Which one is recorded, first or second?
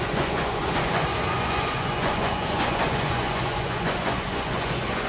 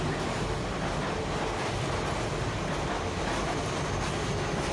second